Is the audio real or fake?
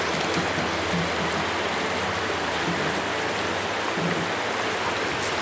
real